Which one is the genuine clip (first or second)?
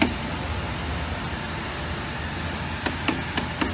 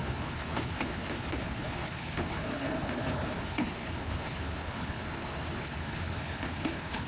first